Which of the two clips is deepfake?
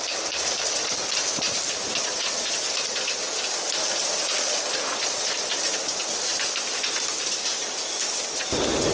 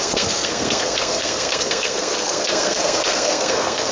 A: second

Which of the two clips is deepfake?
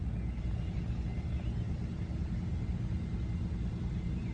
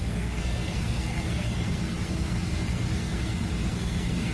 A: second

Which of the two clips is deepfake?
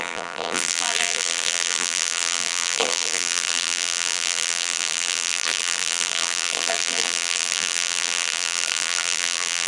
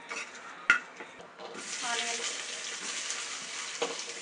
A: first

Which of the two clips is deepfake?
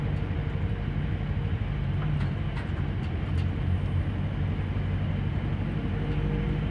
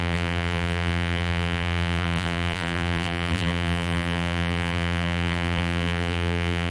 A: second